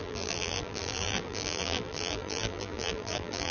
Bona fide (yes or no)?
no